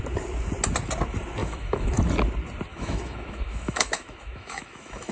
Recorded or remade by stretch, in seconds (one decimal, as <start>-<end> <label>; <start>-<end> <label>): 0.0-1.4 recorded; 1.4-2.0 remade; 2.0-2.7 recorded; 2.7-5.1 remade